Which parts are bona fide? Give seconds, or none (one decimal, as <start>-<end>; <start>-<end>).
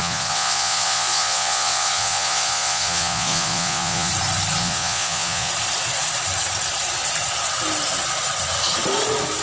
4.1-4.6; 5.5-9.4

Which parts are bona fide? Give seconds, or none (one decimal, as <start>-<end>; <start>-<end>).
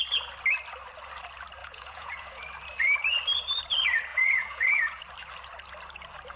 0.0-1.6; 2.4-4.1; 5.0-6.4